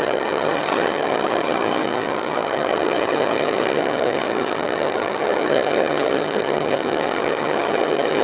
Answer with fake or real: fake